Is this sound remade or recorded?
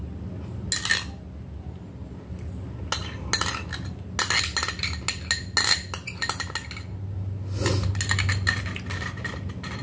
recorded